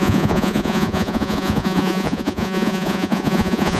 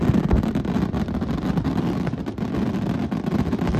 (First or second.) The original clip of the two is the second